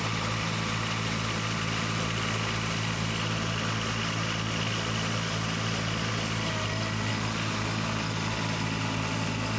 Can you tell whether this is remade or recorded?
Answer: recorded